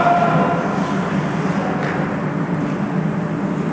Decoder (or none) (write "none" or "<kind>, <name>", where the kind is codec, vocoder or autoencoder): none